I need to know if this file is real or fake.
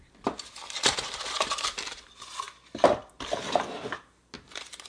real